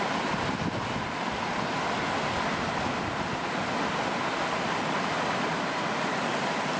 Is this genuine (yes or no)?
yes